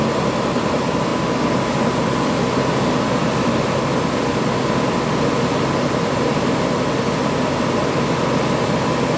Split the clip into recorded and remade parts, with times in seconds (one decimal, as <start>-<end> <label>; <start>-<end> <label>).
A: 0.0-9.2 recorded